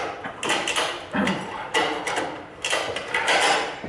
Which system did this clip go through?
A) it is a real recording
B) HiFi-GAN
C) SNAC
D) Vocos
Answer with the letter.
A